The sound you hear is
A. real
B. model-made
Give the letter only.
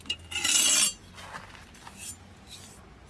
A